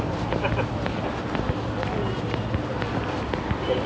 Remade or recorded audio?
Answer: remade